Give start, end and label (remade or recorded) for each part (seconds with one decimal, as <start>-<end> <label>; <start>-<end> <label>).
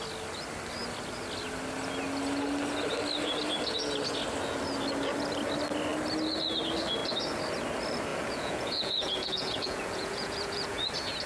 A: 0.0-8.1 recorded; 8.1-10.9 remade; 10.9-11.3 recorded